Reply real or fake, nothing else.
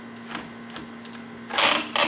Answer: real